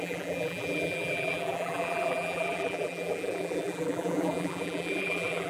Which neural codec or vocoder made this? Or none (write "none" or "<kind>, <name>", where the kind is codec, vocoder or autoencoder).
vocoder, BigVGAN v2